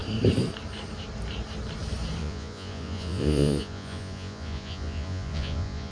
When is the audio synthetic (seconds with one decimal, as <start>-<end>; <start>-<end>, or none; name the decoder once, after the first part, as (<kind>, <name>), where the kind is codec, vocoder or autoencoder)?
2.2-5.9 (vocoder, Vocos)

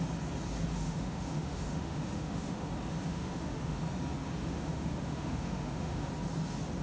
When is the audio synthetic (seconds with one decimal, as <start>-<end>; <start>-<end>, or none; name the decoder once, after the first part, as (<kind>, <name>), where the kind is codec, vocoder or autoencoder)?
0.7-2.7 (autoencoder, DAC-VAE); 3.1-3.8; 4.4-6.1

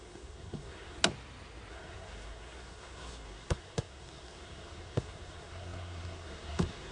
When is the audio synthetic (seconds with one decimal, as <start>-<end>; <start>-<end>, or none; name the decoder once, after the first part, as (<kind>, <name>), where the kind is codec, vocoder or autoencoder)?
0.0-1.0 (codec, SNAC); 1.7-6.9

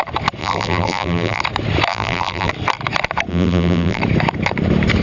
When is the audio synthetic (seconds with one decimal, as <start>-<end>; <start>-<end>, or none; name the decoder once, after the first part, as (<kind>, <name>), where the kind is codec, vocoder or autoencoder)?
0.4-1.4 (vocoder, BigVGAN v2); 1.9-2.5; 3.3-4.0

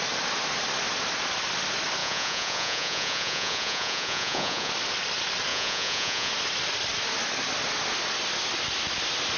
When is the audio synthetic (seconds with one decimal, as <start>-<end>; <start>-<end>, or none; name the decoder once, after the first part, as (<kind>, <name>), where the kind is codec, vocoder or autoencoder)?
2.0-4.7 (vocoder, Vocos); 5.5-6.3